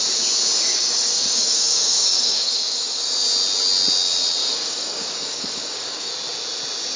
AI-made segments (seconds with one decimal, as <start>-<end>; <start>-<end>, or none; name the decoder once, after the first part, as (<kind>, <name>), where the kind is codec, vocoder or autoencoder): 0.7-3.1 (codec, DAC); 4.4-6.1